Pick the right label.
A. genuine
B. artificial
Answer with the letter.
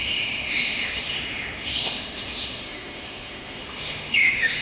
B